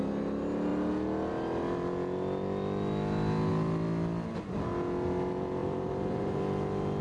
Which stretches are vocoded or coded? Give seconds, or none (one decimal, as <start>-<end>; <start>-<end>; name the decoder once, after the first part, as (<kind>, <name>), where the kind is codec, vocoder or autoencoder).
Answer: 5.6-6.4 (vocoder, BigVGAN v2)

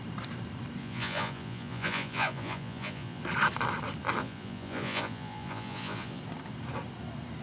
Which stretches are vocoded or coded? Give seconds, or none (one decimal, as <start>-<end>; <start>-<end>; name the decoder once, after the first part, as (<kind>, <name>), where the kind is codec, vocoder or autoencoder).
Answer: 0.8-3.2 (vocoder, Vocos); 4.2-6.2

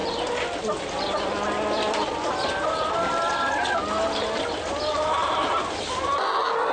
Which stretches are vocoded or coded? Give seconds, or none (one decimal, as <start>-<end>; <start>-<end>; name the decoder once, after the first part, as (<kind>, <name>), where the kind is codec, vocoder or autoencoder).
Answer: none